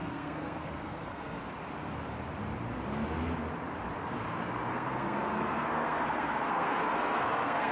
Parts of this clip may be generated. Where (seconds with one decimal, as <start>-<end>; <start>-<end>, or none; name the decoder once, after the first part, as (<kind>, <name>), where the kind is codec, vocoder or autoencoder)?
0.0-1.4 (codec, SNAC); 4.7-7.7